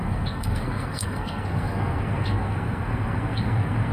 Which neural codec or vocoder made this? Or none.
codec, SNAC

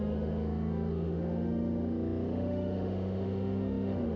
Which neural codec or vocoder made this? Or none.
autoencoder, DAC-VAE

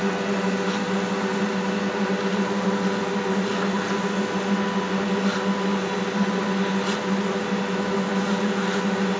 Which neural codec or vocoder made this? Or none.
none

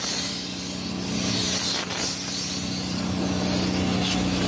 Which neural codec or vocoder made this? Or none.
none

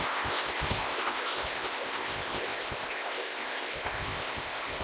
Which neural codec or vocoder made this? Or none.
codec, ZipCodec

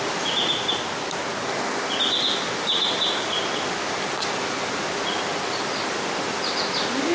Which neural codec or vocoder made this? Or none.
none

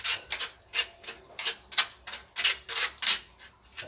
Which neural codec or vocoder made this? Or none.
none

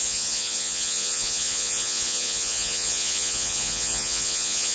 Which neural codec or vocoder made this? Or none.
vocoder, Vocos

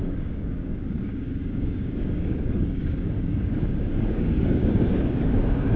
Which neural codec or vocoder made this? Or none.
codec, DAC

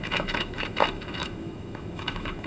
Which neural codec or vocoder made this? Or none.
autoencoder, DAC-VAE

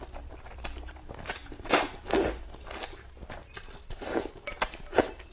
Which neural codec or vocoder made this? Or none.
none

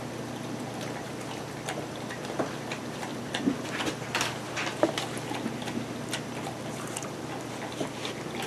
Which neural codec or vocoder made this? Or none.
none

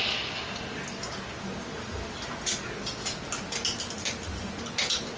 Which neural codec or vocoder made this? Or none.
none